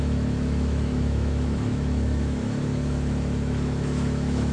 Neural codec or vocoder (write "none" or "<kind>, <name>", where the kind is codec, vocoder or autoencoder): autoencoder, DAC-VAE